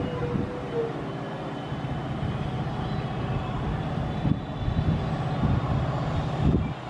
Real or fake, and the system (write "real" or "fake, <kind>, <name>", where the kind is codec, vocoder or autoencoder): real